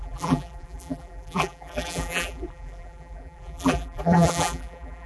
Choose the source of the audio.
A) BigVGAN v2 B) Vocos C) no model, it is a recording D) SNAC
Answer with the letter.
A